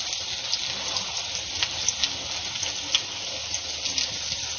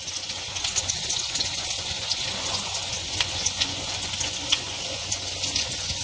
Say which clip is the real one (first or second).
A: first